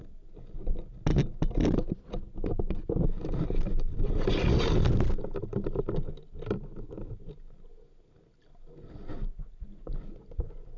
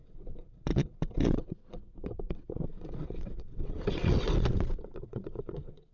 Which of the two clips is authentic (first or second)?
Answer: first